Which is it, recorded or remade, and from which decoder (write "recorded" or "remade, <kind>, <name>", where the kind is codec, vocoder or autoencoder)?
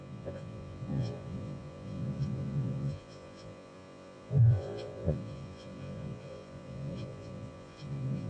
remade, vocoder, Vocos